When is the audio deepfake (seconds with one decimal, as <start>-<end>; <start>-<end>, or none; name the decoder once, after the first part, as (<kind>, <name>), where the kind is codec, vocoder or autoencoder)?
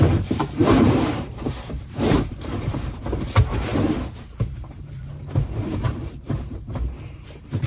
0.0-3.7 (vocoder, BigVGAN v2); 4.5-7.7